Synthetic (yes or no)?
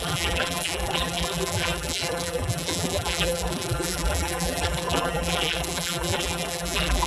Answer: yes